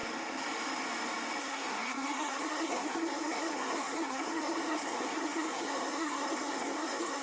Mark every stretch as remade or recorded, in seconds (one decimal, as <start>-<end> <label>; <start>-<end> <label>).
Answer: 0.0-1.4 recorded; 1.4-7.2 remade